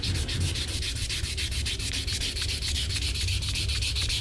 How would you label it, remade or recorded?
recorded